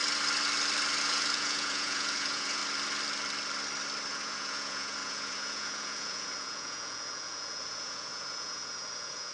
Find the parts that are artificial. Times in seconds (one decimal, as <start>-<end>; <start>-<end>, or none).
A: 1.0-2.6; 4.1-9.3